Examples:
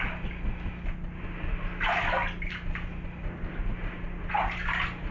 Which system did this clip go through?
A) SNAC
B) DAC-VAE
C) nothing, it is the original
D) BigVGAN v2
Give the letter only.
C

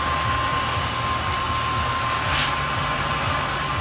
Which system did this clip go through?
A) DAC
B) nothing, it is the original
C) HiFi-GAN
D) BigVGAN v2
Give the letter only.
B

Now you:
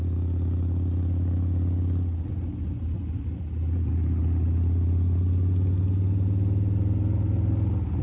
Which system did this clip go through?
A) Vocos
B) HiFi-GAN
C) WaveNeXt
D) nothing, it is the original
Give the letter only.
D